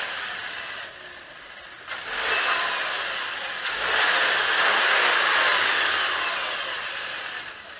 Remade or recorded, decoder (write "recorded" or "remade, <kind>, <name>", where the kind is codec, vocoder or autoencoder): recorded